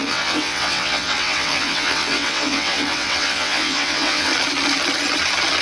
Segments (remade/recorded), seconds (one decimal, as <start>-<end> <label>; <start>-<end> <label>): 0.0-4.3 remade; 4.3-5.6 recorded